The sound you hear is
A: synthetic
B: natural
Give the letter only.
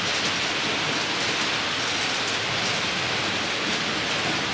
B